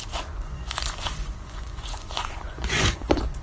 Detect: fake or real fake